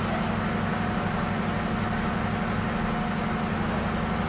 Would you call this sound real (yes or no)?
yes